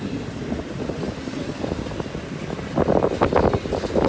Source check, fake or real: real